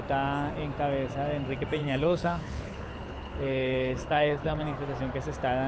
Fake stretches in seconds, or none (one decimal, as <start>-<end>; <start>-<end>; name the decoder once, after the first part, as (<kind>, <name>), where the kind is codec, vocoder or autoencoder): 1.8-4.6 (codec, HILCodec)